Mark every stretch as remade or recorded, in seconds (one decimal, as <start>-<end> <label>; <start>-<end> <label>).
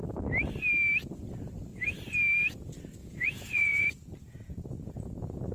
0.0-3.0 recorded; 3.0-3.9 remade; 3.9-5.5 recorded